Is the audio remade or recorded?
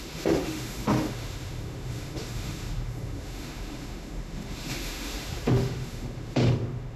remade